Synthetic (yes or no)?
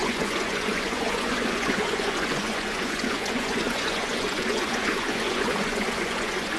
yes